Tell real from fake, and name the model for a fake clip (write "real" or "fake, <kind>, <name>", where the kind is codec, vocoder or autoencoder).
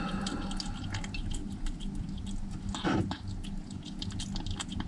real